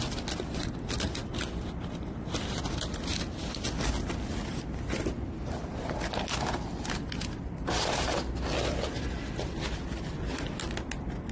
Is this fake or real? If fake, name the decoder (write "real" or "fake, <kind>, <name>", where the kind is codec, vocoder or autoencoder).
real